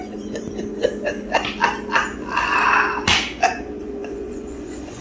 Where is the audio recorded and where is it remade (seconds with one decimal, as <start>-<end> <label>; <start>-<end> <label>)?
0.0-0.8 remade; 0.8-3.8 recorded; 3.8-5.0 remade